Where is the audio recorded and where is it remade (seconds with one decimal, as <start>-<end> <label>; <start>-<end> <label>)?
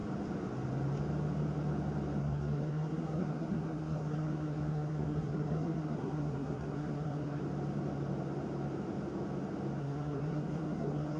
0.0-2.2 recorded; 2.2-7.4 remade; 7.4-9.8 recorded; 9.8-11.2 remade